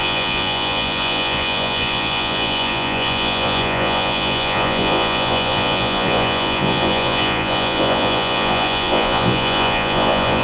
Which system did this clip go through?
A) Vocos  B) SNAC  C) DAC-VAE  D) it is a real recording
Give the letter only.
A